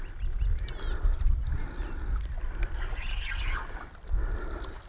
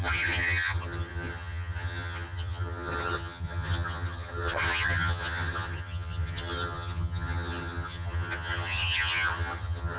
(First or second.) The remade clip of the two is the second